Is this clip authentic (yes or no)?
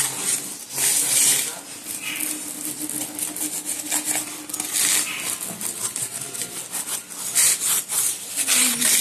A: yes